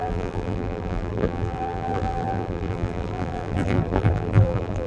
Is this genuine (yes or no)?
no